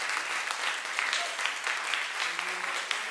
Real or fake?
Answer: real